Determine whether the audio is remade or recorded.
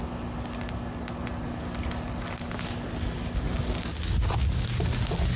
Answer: recorded